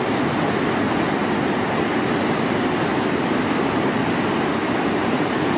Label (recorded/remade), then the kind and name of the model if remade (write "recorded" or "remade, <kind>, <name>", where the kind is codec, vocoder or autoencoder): recorded